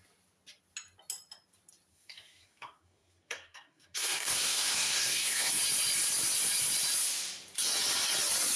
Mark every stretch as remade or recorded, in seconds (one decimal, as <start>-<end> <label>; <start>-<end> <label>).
0.0-1.9 recorded; 1.9-5.5 remade; 5.5-8.6 recorded